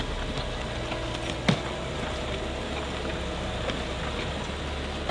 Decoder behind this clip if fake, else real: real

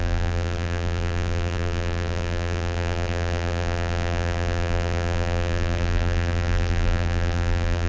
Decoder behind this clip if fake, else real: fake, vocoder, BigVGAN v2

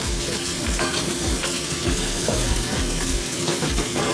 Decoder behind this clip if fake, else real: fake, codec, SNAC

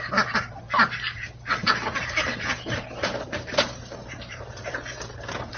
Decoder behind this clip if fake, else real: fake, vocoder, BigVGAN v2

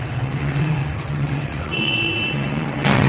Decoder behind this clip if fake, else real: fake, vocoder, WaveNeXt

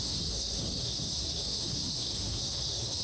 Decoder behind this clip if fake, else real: fake, codec, SNAC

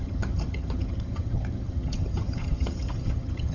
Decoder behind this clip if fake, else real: fake, vocoder, HiFi-GAN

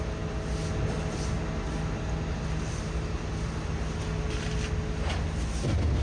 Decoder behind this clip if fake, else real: real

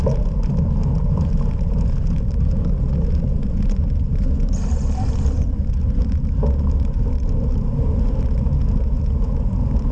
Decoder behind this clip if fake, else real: real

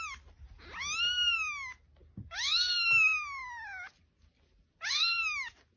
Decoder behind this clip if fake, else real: real